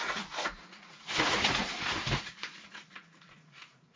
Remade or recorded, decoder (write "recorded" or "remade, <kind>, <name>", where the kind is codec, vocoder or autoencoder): remade, vocoder, Vocos